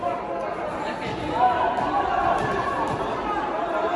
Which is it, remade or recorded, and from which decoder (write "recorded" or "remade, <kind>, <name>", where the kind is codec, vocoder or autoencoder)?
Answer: recorded